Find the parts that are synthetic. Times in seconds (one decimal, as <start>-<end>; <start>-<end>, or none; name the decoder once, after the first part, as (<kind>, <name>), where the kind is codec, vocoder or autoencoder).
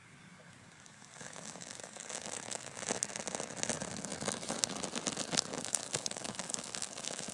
0.0-2.8 (codec, DAC); 5.5-7.3